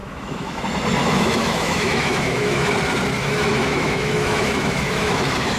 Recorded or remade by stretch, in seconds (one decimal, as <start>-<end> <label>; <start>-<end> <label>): 0.0-0.6 remade; 0.6-1.0 recorded; 1.0-2.7 remade; 2.7-3.2 recorded; 3.2-5.6 remade